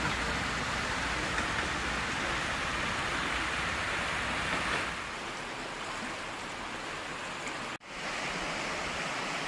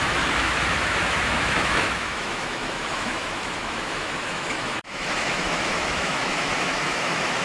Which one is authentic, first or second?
first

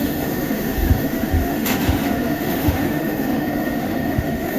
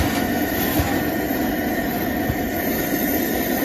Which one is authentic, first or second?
second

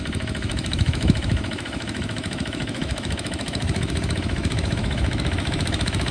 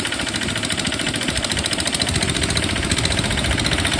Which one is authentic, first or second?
second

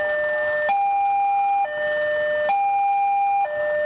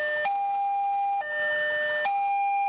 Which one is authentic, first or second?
first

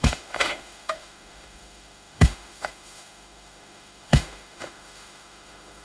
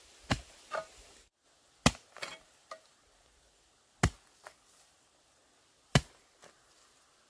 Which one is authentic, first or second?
second